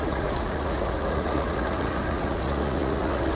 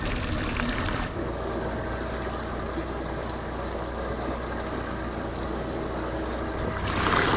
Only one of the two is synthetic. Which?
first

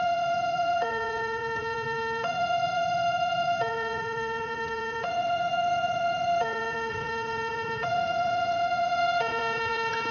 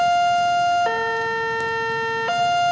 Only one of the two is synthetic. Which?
first